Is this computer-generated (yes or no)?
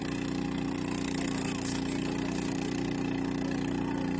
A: no